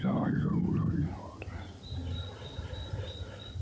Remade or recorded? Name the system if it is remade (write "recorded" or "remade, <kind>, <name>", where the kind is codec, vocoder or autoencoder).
recorded